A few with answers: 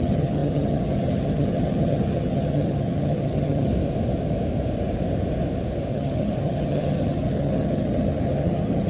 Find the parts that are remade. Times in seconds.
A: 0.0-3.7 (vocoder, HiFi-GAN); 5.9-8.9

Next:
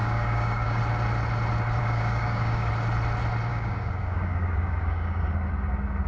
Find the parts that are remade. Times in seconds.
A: 0.0-0.8 (codec, DAC); 1.8-2.7; 3.5-5.2